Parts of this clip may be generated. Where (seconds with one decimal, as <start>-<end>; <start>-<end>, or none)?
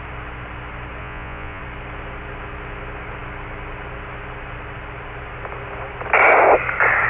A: 1.0-1.6